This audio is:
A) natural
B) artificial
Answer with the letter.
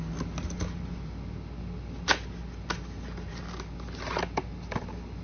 A